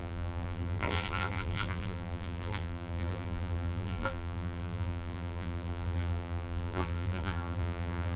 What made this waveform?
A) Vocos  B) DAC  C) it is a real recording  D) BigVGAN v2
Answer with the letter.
D